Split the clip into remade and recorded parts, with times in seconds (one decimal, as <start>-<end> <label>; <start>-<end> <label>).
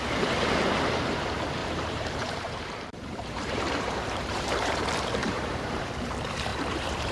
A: 0.0-1.6 recorded; 1.6-4.8 remade; 4.8-5.2 recorded; 5.2-5.9 remade; 5.9-6.5 recorded; 6.5-7.1 remade